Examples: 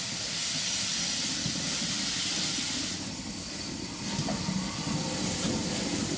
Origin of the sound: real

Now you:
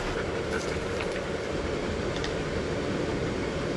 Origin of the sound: real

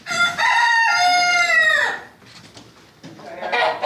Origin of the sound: real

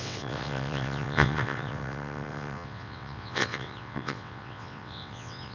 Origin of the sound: fake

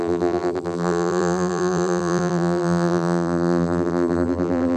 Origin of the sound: fake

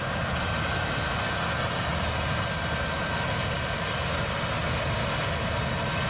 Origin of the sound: real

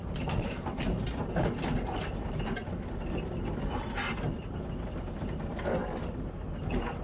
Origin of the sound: real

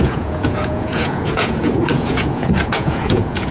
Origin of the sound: fake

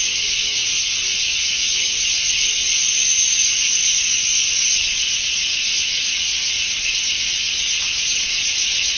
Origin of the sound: fake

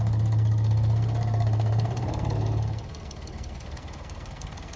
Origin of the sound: fake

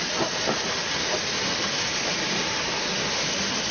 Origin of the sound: real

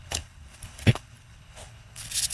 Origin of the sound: fake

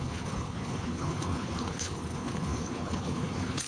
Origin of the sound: fake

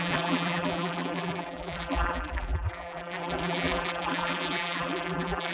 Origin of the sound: fake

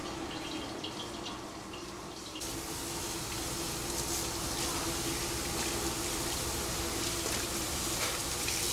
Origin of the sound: real